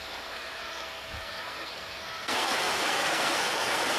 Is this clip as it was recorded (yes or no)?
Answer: no